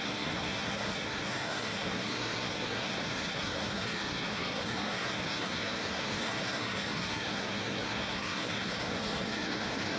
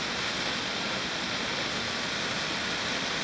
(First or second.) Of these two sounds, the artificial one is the first